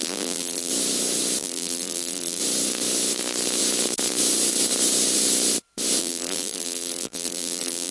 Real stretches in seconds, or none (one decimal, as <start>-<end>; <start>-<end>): 0.7-1.4; 2.4-6.0